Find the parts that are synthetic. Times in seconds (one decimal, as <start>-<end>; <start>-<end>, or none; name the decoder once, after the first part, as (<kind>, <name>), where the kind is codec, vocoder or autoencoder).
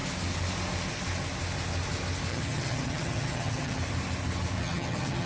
2.3-3.8 (vocoder, HiFi-GAN); 4.6-5.3